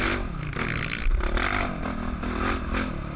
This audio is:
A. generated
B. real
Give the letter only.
B